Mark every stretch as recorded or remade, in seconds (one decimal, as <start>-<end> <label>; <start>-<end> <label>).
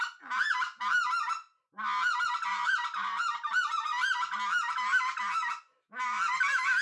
0.0-6.8 recorded